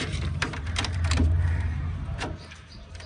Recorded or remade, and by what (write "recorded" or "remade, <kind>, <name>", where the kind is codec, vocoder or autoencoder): remade, vocoder, BigVGAN v2